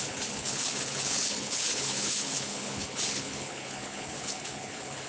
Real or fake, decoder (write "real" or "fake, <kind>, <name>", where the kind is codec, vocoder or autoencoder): fake, codec, HILCodec